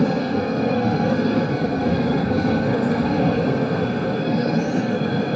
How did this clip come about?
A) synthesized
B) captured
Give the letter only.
A